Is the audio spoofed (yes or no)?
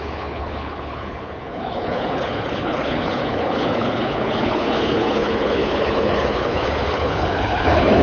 yes